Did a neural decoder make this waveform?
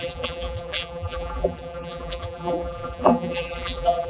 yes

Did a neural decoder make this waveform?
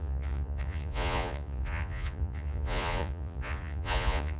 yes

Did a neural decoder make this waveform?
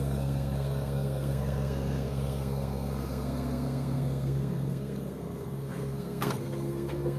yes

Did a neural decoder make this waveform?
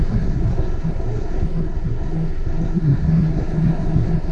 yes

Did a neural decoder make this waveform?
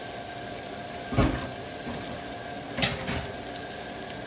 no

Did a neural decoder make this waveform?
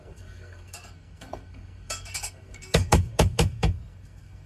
yes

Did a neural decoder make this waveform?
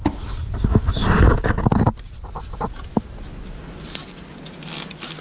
no